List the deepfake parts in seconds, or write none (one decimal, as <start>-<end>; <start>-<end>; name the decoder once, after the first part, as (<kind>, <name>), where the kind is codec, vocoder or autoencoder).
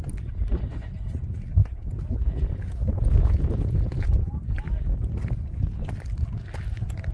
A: 1.6-4.6 (vocoder, Vocos)